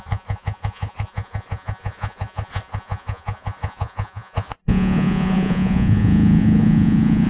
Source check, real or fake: fake